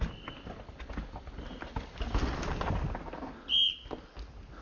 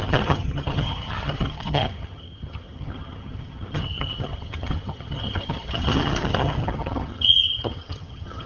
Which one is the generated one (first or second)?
second